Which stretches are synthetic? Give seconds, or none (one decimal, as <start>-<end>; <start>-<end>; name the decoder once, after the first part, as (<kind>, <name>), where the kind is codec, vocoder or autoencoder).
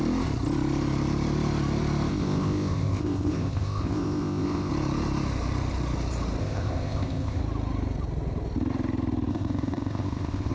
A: 2.1-4.7 (codec, ZipCodec); 6.4-7.4; 9.3-10.5